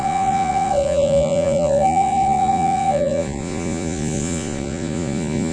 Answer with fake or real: fake